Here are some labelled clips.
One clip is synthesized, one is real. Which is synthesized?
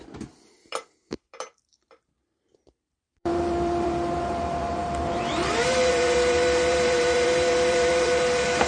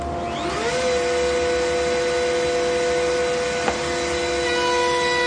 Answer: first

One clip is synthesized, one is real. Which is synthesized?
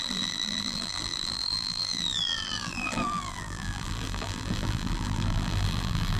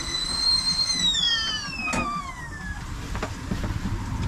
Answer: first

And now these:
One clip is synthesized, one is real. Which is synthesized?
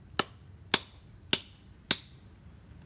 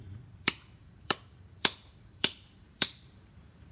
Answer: second